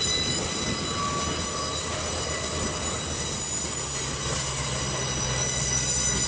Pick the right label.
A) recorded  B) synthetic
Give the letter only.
A